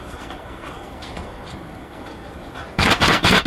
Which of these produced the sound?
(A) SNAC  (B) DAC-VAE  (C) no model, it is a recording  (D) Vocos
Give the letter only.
A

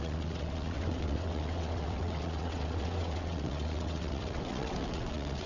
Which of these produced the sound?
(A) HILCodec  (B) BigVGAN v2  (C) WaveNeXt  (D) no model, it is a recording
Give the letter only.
C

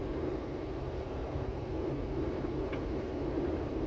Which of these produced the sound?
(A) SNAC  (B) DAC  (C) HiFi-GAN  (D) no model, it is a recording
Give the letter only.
D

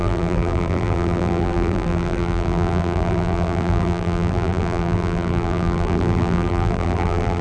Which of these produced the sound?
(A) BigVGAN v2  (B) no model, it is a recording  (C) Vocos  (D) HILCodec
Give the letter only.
A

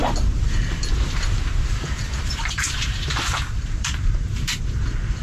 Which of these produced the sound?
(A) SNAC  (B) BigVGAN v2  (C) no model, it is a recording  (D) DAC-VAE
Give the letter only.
B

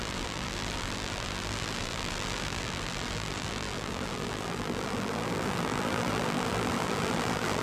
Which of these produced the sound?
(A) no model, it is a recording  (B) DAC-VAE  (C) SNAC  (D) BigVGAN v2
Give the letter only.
D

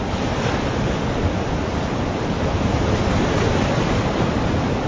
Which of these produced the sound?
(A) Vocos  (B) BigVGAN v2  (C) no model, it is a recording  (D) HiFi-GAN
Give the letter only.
C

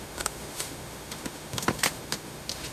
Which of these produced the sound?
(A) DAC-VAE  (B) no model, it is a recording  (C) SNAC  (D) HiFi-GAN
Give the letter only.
A